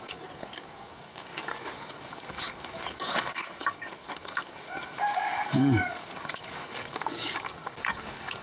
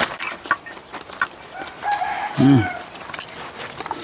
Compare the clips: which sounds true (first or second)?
second